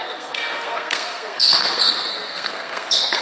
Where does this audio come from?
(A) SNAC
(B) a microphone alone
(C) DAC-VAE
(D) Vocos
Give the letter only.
A